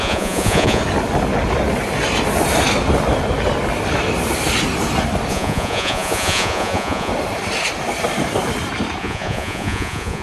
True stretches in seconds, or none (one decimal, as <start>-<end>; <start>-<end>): 0.8-5.3; 7.1-9.0